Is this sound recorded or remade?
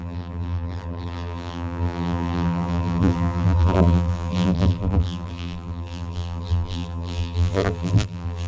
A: remade